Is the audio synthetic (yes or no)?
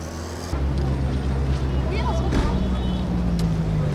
no